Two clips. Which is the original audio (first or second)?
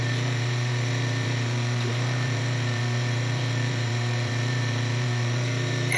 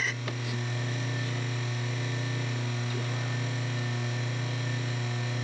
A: second